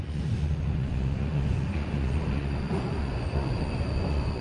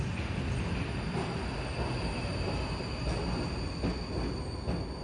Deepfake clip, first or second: first